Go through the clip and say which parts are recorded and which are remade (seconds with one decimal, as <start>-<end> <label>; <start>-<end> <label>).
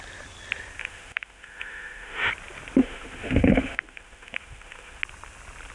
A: 0.0-0.8 recorded; 0.8-2.3 remade; 2.3-2.8 recorded; 2.8-5.0 remade; 5.0-5.7 recorded